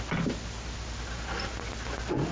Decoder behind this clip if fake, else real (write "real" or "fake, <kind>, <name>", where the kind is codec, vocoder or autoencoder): real